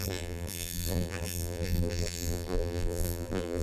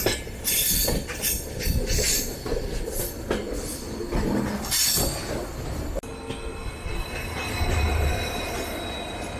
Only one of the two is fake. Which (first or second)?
first